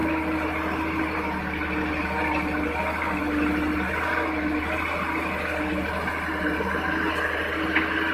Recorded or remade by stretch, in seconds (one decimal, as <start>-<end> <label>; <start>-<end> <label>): 0.0-8.1 recorded